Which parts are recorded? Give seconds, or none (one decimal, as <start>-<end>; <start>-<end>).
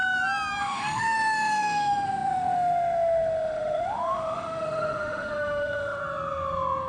0.0-0.6; 6.0-6.9